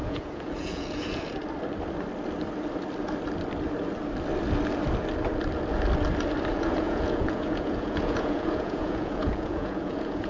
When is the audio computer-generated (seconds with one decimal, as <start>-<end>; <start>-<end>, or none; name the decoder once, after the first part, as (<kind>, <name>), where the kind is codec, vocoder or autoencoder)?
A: 0.0-1.4 (vocoder, Vocos); 6.5-10.3